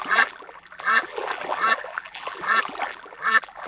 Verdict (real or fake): fake